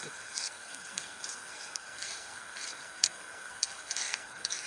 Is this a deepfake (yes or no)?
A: yes